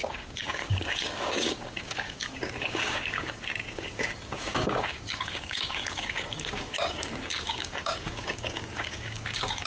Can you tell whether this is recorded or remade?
remade